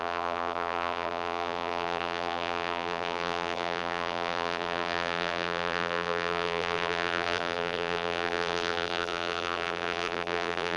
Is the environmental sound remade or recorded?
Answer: remade